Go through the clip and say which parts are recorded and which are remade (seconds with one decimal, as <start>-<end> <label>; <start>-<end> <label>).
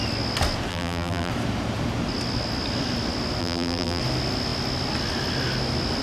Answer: 0.0-0.7 recorded; 0.7-1.3 remade; 1.3-3.4 recorded; 3.4-4.0 remade; 4.0-6.0 recorded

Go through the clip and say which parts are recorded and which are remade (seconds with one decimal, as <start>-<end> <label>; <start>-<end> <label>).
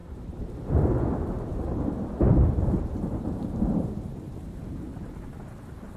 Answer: 0.0-1.1 remade; 1.1-1.5 recorded; 1.5-5.1 remade; 5.1-6.0 recorded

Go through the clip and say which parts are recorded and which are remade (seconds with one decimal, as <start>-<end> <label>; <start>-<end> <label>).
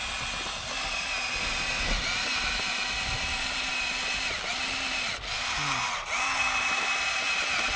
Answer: 0.0-7.8 recorded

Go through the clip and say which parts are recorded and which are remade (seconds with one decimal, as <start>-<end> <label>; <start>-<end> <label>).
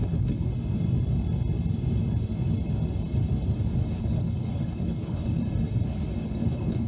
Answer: 0.0-0.5 remade; 0.5-4.0 recorded; 4.0-5.4 remade; 5.4-6.2 recorded; 6.2-6.9 remade